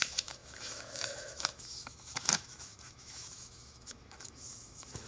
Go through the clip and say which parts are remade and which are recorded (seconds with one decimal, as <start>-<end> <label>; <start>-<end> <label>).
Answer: 0.0-5.1 remade